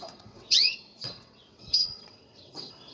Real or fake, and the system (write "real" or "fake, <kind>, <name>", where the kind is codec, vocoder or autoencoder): fake, vocoder, WaveNeXt